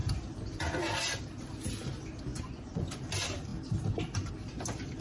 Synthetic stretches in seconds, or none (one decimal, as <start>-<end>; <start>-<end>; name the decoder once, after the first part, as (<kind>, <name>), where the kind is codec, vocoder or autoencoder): 2.3-3.0 (vocoder, Vocos)